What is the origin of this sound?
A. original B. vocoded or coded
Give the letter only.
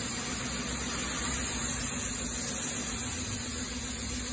A